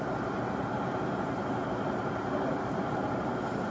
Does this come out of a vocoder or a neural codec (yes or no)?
no